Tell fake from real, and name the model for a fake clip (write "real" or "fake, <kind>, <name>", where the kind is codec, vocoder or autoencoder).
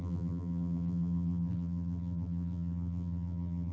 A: fake, vocoder, BigVGAN v2